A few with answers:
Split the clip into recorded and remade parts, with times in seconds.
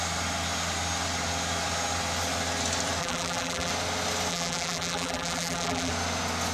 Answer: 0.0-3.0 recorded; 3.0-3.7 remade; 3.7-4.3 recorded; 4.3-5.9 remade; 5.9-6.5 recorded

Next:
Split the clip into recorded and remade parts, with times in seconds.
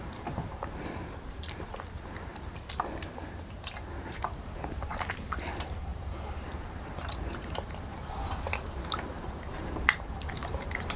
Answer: 0.0-2.3 remade; 2.3-3.3 recorded; 3.3-7.9 remade; 7.9-9.1 recorded; 9.1-11.0 remade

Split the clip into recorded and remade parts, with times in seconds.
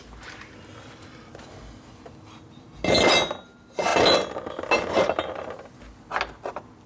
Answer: 0.0-6.9 recorded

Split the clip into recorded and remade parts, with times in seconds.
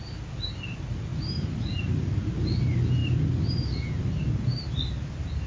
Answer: 0.0-1.1 recorded; 1.1-1.8 remade; 1.8-3.0 recorded; 3.0-4.6 remade; 4.6-5.5 recorded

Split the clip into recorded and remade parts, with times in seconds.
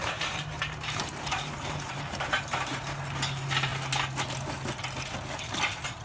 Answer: 0.0-3.0 remade; 3.0-6.0 recorded